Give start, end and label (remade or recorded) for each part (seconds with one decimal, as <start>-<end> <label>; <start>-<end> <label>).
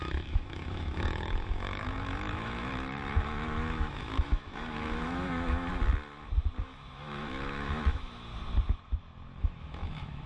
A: 0.0-5.7 remade; 5.7-6.6 recorded; 6.6-8.3 remade; 8.3-9.4 recorded; 9.4-10.3 remade